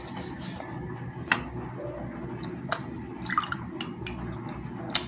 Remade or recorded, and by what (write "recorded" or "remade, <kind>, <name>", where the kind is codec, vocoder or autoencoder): recorded